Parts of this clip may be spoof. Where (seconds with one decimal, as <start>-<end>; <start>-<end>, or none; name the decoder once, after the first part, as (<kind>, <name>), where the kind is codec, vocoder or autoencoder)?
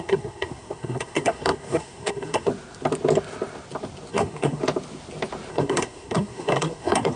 0.0-2.5 (codec, SNAC); 4.1-4.6; 5.5-7.2